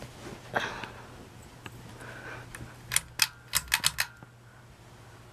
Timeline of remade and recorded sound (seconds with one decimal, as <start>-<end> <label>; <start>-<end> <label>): 0.0-5.3 recorded